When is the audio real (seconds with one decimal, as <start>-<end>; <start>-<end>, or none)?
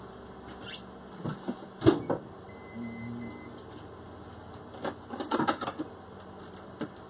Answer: 0.0-7.1